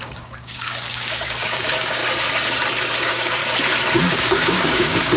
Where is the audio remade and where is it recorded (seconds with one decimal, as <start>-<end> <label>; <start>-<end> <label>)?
0.0-2.0 remade; 2.0-3.0 recorded; 3.0-3.4 remade; 3.4-4.1 recorded; 4.1-5.2 remade